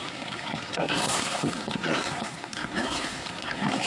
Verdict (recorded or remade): remade